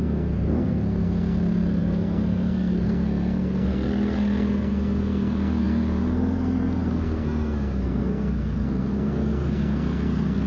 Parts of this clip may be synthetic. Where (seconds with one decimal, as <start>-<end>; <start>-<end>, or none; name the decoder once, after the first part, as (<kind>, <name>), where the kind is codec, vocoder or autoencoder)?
0.0-10.5 (codec, SNAC)